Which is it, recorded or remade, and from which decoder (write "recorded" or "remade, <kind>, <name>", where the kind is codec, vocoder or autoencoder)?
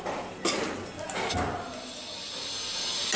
recorded